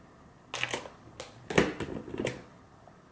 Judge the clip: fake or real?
real